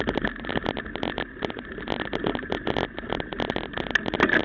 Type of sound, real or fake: real